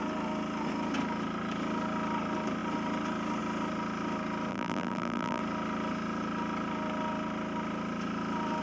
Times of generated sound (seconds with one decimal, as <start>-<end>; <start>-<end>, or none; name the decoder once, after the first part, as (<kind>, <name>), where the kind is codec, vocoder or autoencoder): 4.5-5.4 (vocoder, BigVGAN v2)